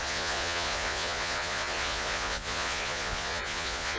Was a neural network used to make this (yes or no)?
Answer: yes